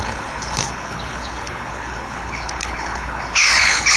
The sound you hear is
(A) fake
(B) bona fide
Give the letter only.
A